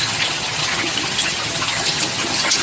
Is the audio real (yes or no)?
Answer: no